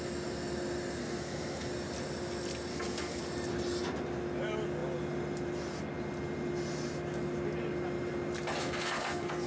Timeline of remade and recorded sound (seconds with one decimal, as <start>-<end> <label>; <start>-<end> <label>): 0.0-1.0 recorded; 1.0-1.7 remade; 1.7-2.7 recorded; 2.7-3.2 remade; 3.2-8.6 recorded; 8.6-9.5 remade